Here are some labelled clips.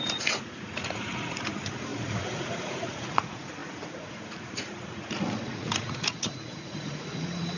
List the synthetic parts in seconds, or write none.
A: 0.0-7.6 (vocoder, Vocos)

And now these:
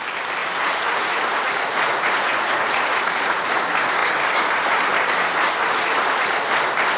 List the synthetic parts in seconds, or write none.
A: 0.4-3.5 (vocoder, Vocos)

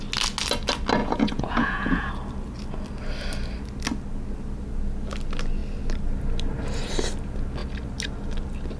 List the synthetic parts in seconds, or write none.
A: 1.0-2.1 (vocoder, Vocos)

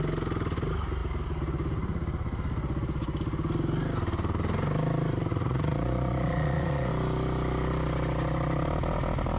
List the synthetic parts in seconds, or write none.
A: 5.3-6.9 (vocoder, Vocos)

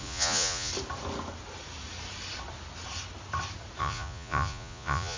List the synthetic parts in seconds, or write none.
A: 0.0-0.7 (vocoder, Vocos); 3.8-5.2

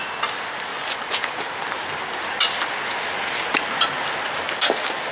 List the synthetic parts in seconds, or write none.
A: 0.7-1.4 (vocoder, Vocos)

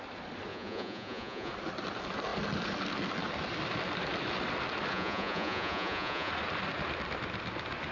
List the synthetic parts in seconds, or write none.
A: 0.5-1.5 (vocoder, Vocos); 4.9-6.3

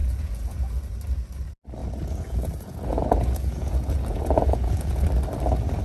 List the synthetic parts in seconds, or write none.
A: 0.0-0.8 (vocoder, Vocos); 1.8-5.0